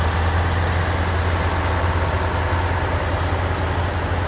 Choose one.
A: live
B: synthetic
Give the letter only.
A